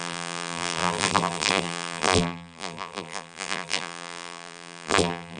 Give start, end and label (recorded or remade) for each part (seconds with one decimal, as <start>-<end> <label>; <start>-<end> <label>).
0.0-5.4 remade